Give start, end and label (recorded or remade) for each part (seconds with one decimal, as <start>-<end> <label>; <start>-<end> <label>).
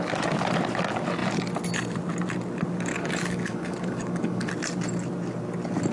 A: 0.0-2.9 recorded; 2.9-4.5 remade; 4.5-5.9 recorded